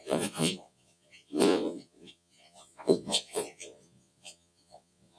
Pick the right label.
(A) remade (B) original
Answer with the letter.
A